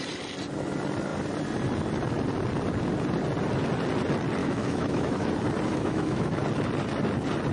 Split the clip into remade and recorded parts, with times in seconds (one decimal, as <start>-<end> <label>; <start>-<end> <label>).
0.0-4.4 recorded; 4.4-5.3 remade; 5.3-5.7 recorded; 5.7-6.4 remade; 6.4-7.5 recorded